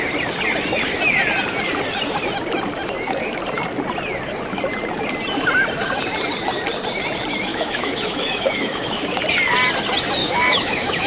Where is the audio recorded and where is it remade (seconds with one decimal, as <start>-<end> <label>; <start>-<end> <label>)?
0.0-7.5 recorded; 7.5-9.2 remade; 9.2-10.2 recorded; 10.2-11.1 remade